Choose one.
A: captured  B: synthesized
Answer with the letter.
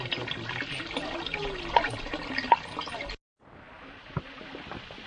A